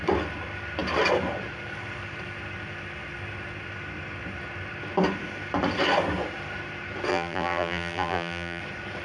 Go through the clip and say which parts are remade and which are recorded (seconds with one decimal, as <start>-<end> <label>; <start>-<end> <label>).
0.0-7.1 recorded; 7.1-8.6 remade; 8.6-9.0 recorded

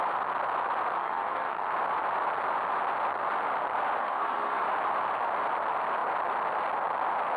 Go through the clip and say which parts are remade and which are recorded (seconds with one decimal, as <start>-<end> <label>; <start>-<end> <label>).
0.0-1.0 recorded; 1.0-1.7 remade; 1.7-4.0 recorded; 4.0-4.6 remade; 4.6-7.4 recorded

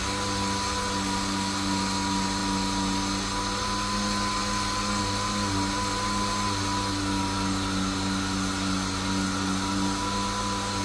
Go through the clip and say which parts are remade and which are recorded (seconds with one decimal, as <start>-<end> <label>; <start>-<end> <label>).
0.0-10.8 recorded

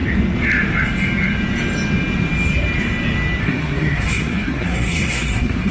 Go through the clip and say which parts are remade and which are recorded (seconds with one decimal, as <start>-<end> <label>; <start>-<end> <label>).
0.0-3.4 recorded; 3.4-5.7 remade

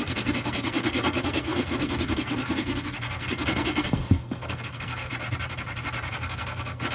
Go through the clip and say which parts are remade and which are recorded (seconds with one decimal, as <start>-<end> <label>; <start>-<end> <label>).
0.0-5.1 remade; 5.1-6.1 recorded; 6.1-6.9 remade

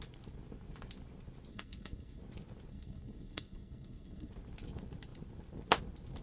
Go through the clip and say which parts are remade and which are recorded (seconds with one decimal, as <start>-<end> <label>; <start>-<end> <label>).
0.0-1.5 recorded; 1.5-2.2 remade; 2.2-2.7 recorded; 2.7-4.3 remade; 4.3-6.2 recorded

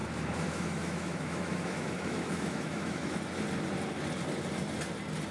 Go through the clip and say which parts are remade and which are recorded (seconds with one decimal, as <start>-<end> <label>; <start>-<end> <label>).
0.0-3.2 remade; 3.2-5.3 recorded

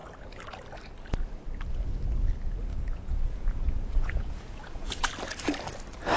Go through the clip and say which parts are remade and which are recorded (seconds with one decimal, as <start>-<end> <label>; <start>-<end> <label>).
0.0-2.7 recorded; 2.7-5.1 remade; 5.1-6.2 recorded